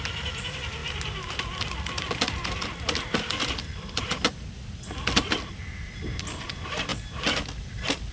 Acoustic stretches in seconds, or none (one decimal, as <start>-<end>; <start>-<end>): 0.0-8.1